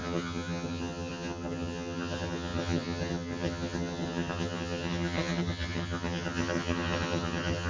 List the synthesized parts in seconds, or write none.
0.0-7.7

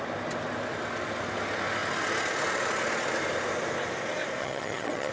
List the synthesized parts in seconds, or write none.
4.4-5.1

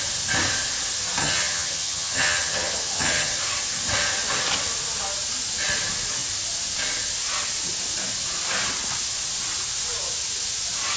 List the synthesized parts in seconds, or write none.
1.2-3.3

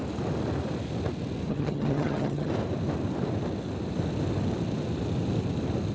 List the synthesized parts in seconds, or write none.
1.5-2.5

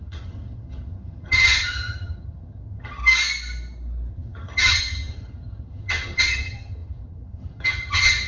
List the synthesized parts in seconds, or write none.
0.0-3.0; 4.1-8.3

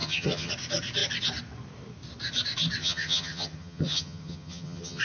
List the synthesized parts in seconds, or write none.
0.0-0.5; 2.8-5.0